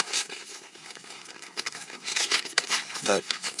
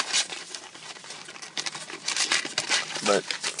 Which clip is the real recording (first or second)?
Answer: second